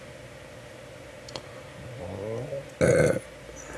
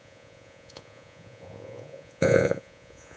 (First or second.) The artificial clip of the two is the second